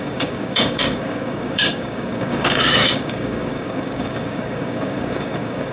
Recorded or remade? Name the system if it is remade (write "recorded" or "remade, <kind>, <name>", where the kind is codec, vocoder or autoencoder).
remade, codec, DAC